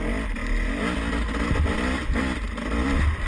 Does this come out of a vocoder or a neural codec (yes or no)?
no